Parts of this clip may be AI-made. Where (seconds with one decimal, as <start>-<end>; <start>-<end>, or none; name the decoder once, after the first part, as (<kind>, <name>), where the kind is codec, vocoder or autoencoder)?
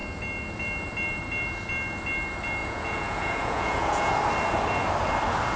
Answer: 2.6-4.1 (vocoder, Vocos)